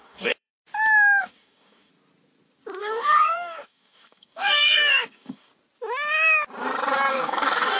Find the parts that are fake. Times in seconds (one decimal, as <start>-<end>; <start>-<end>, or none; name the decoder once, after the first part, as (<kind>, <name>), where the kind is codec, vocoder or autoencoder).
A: 0.0-0.5 (codec, DAC); 1.2-1.9; 2.8-5.5; 7.1-7.8